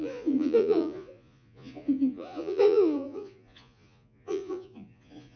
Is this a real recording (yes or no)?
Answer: no